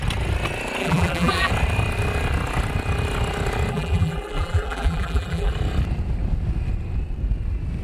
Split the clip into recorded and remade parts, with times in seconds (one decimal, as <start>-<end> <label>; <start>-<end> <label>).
0.0-0.8 recorded; 0.8-1.5 remade; 1.5-3.7 recorded; 3.7-5.5 remade; 5.5-7.8 recorded

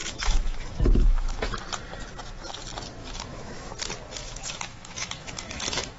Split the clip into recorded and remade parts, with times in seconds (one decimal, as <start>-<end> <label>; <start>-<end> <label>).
0.0-1.4 remade; 1.4-3.0 recorded; 3.0-3.7 remade; 3.7-4.2 recorded; 4.2-6.0 remade

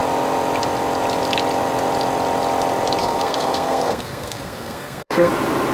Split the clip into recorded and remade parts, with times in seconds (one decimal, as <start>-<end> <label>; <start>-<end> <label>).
0.0-3.0 recorded; 3.0-5.3 remade; 5.3-5.7 recorded

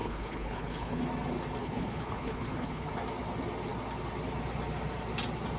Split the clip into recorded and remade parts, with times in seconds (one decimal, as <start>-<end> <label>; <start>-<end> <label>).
0.0-1.0 remade; 1.0-1.6 recorded; 1.6-2.9 remade; 2.9-5.6 recorded